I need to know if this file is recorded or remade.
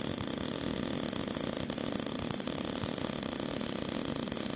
remade